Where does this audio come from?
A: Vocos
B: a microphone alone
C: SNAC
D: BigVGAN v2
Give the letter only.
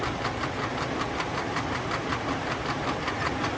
B